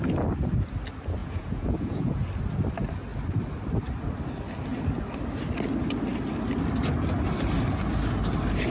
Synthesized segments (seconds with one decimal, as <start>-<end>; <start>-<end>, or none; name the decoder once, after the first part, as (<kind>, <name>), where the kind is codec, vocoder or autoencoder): 1.2-2.2 (vocoder, Vocos)